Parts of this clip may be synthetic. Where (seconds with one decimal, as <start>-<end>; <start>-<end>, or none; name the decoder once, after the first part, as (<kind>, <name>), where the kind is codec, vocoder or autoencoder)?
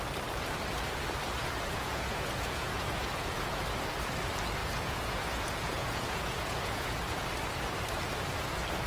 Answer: 1.4-3.6 (vocoder, Vocos); 4.6-7.0